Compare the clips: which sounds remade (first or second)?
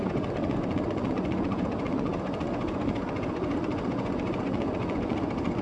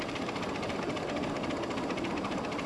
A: first